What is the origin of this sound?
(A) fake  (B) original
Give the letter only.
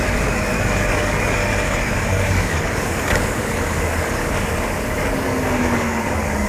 A